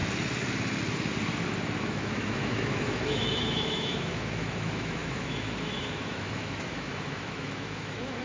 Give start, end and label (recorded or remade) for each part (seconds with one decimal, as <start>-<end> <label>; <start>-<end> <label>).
0.0-1.8 recorded; 1.8-8.2 remade